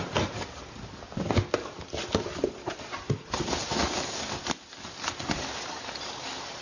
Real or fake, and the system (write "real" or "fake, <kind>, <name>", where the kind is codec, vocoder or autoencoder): real